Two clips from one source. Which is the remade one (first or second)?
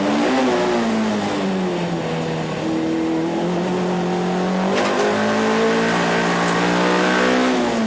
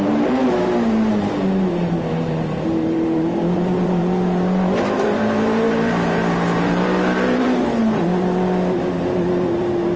second